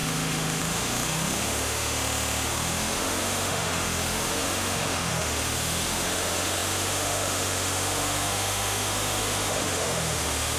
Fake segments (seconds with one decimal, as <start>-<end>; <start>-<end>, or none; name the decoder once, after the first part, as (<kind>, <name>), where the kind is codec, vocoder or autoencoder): 0.0-10.6 (autoencoder, DAC-VAE)